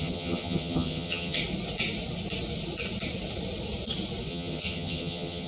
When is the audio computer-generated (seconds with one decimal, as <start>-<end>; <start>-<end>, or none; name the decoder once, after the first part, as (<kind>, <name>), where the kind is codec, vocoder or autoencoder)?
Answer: 0.0-1.4 (vocoder, HiFi-GAN); 4.3-5.5